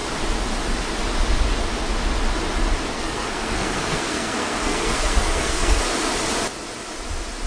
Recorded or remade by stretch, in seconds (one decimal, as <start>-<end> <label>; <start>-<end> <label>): 0.0-2.9 recorded; 2.9-5.8 remade; 5.8-7.5 recorded